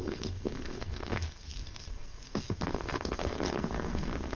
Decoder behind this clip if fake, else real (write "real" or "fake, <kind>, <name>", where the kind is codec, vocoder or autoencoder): fake, codec, SNAC